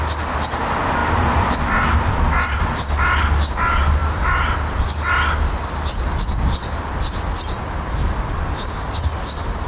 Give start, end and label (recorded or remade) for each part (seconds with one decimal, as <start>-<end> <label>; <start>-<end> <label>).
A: 0.0-9.7 recorded